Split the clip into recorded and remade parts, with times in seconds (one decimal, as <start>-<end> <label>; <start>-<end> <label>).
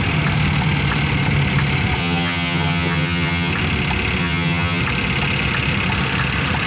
0.0-2.0 recorded; 2.0-3.5 remade; 3.5-4.2 recorded; 4.2-4.8 remade; 4.8-6.7 recorded